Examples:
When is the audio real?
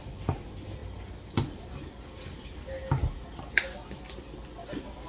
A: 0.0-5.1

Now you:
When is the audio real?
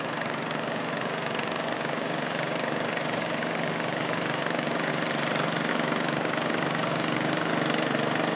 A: 4.9-5.7; 7.5-8.4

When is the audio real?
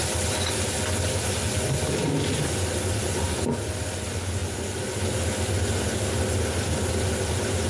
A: 0.0-7.7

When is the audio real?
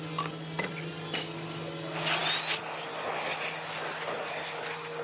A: 0.0-5.0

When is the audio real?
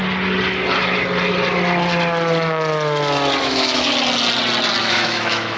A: 0.0-3.4; 3.9-4.8